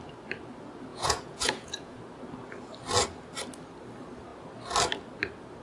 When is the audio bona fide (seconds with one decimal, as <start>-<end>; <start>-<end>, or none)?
0.0-0.9; 2.0-5.6